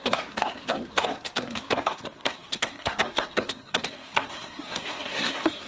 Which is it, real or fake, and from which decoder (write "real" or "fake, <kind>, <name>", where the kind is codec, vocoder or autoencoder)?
fake, codec, SNAC